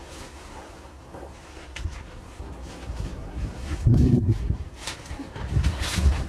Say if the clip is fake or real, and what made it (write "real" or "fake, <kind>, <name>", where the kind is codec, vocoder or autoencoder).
fake, codec, SNAC